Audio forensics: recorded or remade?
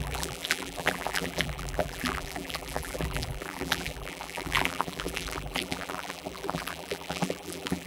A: remade